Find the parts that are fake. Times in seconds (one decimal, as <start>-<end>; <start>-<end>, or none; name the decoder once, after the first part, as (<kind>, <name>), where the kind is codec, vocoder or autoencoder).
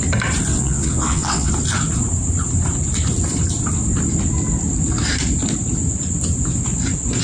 0.5-1.5 (vocoder, WaveNeXt)